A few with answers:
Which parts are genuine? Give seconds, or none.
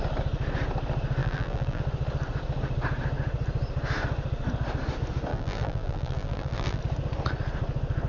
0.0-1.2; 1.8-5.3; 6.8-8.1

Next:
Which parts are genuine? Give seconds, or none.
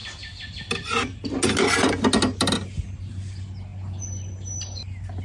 0.0-5.2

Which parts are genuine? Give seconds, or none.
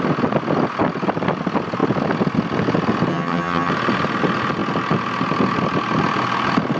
0.0-3.1; 3.7-6.8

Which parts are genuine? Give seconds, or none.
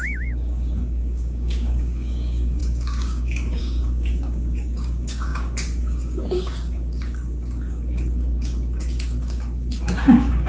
none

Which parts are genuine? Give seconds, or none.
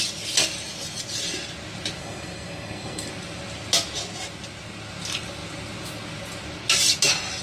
0.0-2.0; 3.1-7.4